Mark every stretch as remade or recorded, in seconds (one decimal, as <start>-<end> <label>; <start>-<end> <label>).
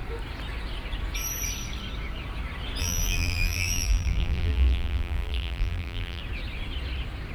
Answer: 0.0-2.8 recorded; 2.8-6.2 remade; 6.2-7.3 recorded